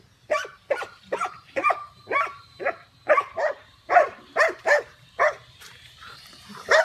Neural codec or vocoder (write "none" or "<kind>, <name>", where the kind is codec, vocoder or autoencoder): vocoder, BigVGAN v2